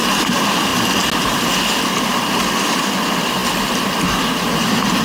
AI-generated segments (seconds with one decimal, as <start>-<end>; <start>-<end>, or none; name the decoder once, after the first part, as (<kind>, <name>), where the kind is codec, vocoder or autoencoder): none